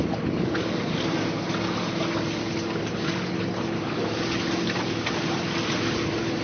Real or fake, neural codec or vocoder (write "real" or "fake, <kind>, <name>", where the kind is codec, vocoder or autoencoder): real